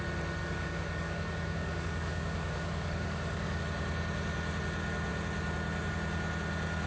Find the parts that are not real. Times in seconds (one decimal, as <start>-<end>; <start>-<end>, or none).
0.4-3.6